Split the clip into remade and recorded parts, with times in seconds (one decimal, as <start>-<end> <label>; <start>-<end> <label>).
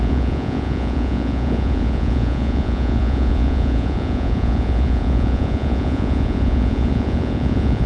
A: 0.0-7.9 remade